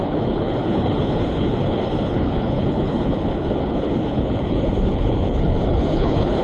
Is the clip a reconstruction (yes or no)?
yes